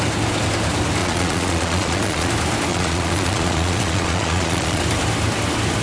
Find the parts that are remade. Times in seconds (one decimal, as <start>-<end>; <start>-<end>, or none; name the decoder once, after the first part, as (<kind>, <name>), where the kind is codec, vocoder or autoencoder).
1.0-2.3 (vocoder, Vocos); 2.7-4.8